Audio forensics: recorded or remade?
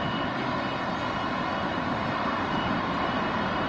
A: recorded